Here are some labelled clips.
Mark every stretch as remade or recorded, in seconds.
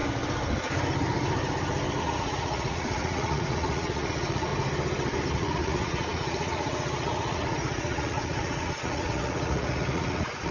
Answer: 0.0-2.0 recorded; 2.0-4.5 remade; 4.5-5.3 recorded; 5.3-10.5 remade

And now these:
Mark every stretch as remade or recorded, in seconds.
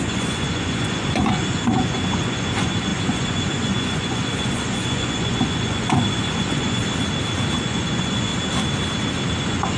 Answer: 0.0-6.8 remade; 6.8-7.6 recorded; 7.6-8.3 remade; 8.3-9.4 recorded; 9.4-9.8 remade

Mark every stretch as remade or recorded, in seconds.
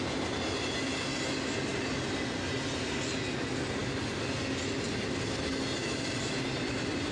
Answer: 0.0-7.1 recorded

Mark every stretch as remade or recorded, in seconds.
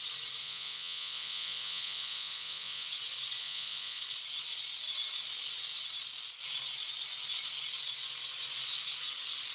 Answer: 0.0-0.4 recorded; 0.4-2.9 remade; 2.9-3.4 recorded; 3.4-4.0 remade; 4.0-9.5 recorded